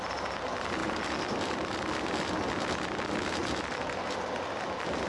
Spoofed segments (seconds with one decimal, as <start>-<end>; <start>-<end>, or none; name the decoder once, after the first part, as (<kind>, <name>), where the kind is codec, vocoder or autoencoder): 0.8-1.7 (vocoder, BigVGAN v2); 3.4-4.6